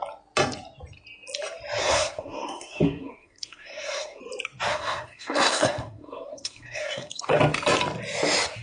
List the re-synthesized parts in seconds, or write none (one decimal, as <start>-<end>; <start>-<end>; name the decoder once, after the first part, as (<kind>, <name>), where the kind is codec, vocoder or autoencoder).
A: 1.8-4.2 (codec, SNAC); 4.7-7.4